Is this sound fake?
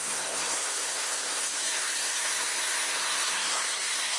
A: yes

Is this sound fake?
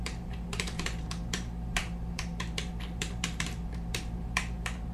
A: yes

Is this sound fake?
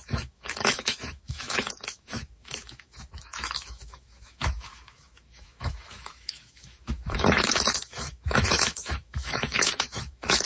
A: yes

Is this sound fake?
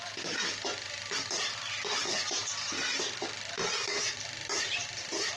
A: yes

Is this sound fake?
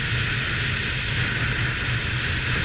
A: no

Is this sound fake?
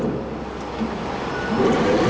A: no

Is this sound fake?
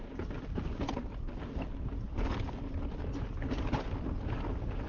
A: no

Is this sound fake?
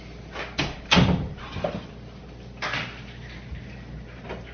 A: no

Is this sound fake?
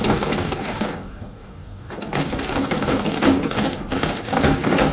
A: yes